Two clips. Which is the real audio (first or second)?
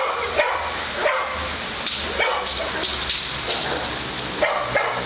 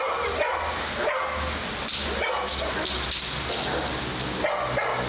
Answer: second